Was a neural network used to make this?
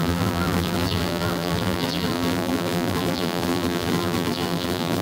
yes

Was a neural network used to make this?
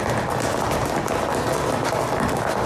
no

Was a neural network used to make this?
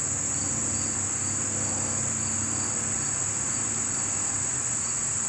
no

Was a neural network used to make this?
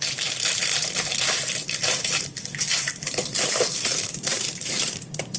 yes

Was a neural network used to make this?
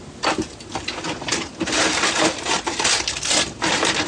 yes